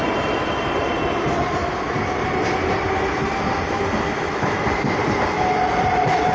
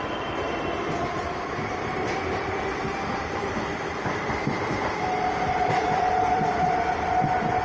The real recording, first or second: first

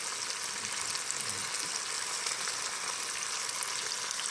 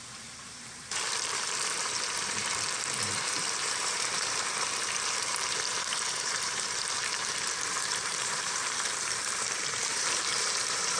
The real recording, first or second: first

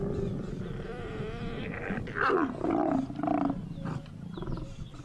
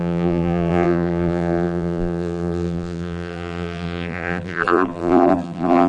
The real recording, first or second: first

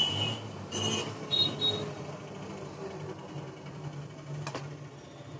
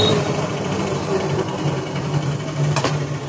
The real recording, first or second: first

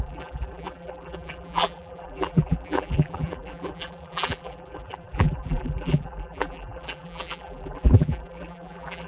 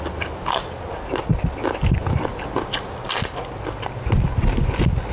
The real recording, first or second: second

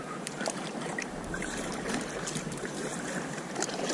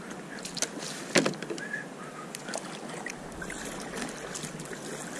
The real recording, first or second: second